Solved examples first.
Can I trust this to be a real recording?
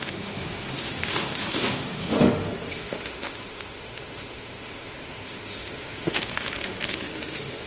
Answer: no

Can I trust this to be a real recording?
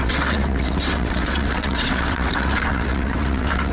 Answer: no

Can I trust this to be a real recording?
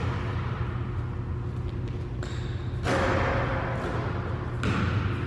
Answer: yes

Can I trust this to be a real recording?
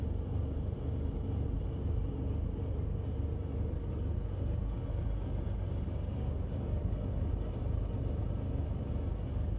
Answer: yes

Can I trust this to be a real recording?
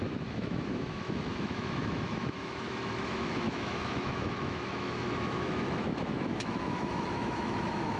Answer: no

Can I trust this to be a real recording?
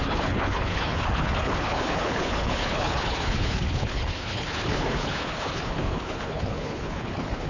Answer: no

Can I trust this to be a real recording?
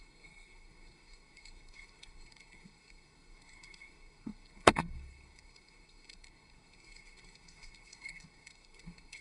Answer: no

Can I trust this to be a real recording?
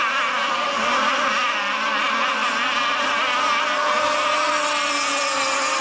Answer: yes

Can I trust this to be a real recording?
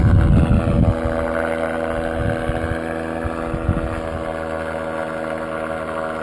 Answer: yes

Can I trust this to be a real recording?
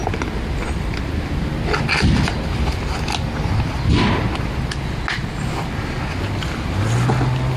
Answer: yes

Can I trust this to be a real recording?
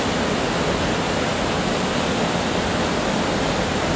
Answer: yes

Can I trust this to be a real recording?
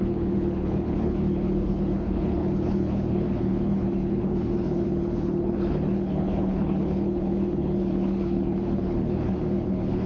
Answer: no